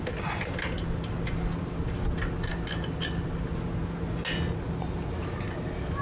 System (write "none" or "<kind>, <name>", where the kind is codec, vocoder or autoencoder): none